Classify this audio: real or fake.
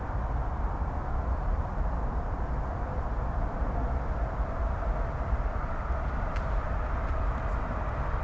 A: real